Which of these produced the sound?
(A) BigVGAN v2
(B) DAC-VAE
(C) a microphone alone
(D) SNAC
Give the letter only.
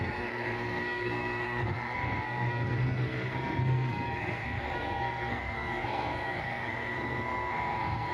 D